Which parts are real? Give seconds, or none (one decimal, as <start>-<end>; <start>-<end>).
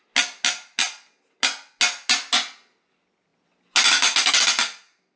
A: 0.0-5.2